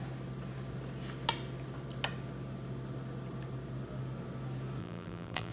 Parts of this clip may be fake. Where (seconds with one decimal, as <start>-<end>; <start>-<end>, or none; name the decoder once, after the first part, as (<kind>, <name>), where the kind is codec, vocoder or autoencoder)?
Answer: 4.8-5.5 (vocoder, BigVGAN v2)